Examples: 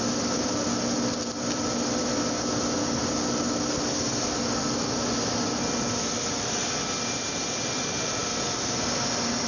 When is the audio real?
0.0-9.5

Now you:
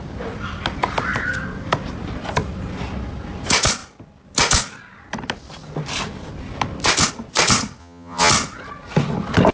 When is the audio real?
0.0-7.8; 8.3-9.5

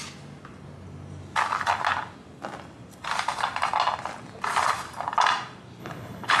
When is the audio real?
0.0-5.8